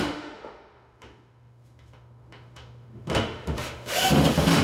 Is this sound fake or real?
fake